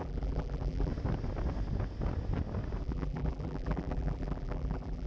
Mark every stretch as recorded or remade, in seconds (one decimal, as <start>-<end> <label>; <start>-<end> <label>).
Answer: 0.0-0.9 remade; 0.9-2.8 recorded; 2.8-5.1 remade